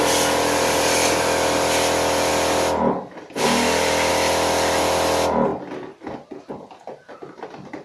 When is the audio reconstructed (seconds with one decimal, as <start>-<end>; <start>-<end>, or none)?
none